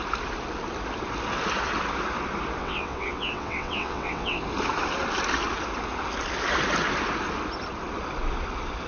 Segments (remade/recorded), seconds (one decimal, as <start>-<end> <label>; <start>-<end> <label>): 0.0-2.6 recorded; 2.6-4.4 remade; 4.4-8.9 recorded